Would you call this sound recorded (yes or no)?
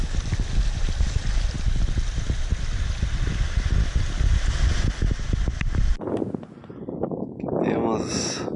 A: yes